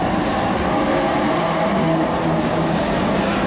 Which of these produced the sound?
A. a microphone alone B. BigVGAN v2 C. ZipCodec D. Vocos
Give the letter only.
A